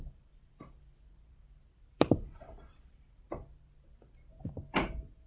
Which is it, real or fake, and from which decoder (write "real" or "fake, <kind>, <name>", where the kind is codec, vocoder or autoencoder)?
fake, vocoder, BigVGAN v2